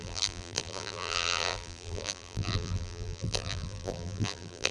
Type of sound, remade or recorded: remade